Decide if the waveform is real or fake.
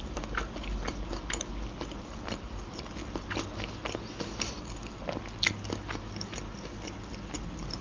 real